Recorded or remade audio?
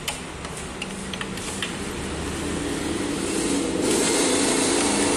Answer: recorded